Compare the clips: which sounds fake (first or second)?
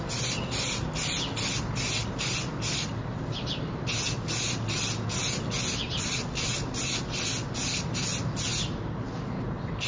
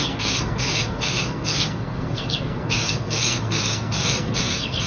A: second